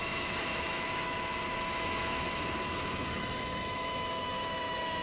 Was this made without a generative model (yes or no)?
no